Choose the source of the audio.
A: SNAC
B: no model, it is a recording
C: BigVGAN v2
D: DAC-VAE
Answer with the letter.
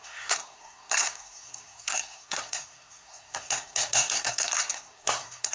A